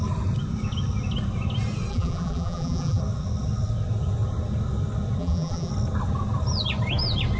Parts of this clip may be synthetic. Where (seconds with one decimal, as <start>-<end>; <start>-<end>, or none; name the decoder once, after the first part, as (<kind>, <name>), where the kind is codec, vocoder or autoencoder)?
1.9-3.0 (vocoder, BigVGAN v2); 5.2-5.7

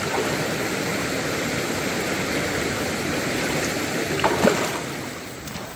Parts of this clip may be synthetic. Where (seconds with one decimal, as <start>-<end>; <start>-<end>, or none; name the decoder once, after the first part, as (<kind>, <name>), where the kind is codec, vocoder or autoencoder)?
0.9-4.4 (vocoder, BigVGAN v2)